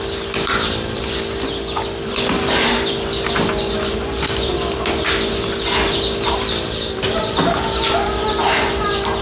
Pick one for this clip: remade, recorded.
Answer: recorded